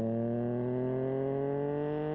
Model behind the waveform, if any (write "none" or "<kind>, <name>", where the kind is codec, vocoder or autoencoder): none